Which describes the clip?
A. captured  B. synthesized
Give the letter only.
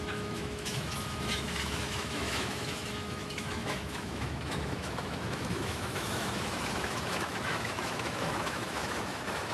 B